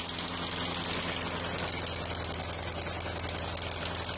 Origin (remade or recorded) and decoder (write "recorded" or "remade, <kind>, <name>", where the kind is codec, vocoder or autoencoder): recorded